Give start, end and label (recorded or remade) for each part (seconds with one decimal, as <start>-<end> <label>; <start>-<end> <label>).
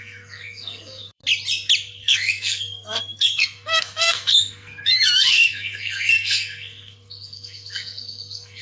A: 0.0-1.2 remade; 1.2-2.0 recorded; 2.0-8.6 remade